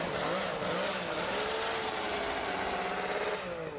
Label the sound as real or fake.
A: real